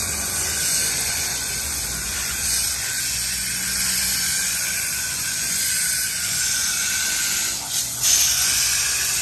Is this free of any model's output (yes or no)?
no